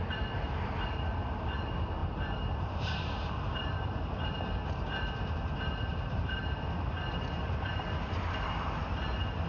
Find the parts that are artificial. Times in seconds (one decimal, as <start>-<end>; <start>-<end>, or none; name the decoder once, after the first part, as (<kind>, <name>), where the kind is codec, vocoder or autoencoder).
5.9-6.4 (vocoder, BigVGAN v2)